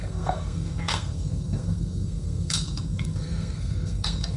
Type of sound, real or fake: fake